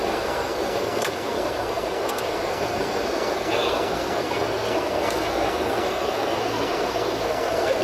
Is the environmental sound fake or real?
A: fake